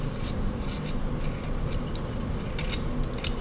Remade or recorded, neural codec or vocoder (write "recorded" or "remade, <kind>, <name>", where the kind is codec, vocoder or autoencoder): recorded